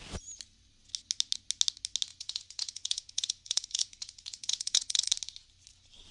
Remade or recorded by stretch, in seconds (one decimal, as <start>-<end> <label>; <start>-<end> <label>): 0.0-2.1 recorded; 2.1-5.1 remade; 5.1-6.1 recorded